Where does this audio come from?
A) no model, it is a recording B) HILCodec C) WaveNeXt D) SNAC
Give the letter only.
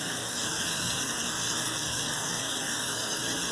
D